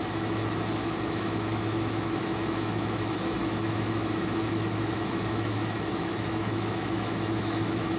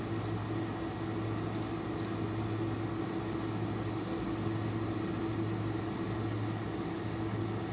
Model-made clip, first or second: first